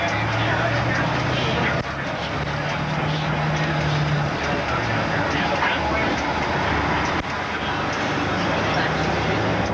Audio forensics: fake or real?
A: real